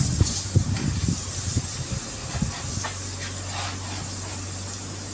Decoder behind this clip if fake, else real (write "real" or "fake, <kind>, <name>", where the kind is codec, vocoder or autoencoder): real